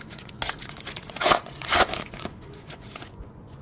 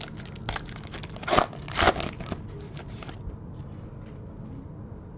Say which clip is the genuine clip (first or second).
second